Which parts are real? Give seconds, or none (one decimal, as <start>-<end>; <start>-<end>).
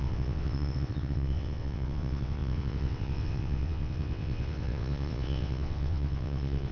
none